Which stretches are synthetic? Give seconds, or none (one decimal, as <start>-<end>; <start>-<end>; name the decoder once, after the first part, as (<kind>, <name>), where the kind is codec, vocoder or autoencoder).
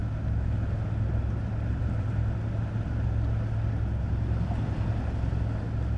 none